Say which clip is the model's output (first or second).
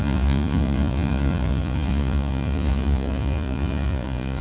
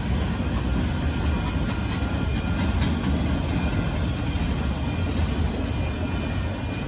first